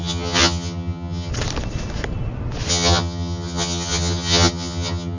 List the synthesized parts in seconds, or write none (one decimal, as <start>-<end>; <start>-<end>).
0.0-1.3; 2.7-5.2